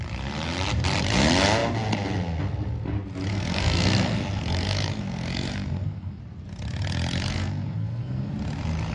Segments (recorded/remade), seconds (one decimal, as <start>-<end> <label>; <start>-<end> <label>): 0.0-3.3 recorded; 3.3-6.2 remade; 6.2-7.3 recorded; 7.3-8.3 remade; 8.3-8.9 recorded